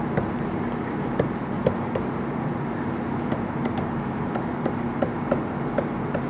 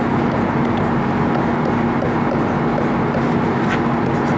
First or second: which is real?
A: second